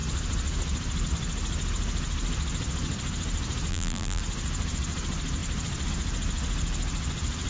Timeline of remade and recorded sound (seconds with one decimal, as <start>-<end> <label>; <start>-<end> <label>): 0.0-3.7 recorded; 3.7-4.2 remade; 4.2-7.5 recorded